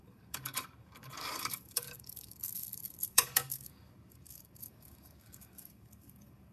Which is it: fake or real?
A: fake